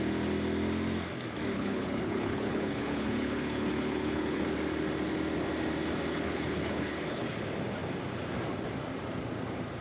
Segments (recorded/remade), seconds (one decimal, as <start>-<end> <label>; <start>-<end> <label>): 0.0-1.5 recorded; 1.5-4.4 remade; 4.4-6.1 recorded; 6.1-7.3 remade; 7.3-9.8 recorded